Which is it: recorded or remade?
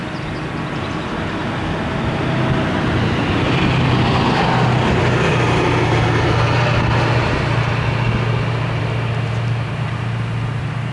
recorded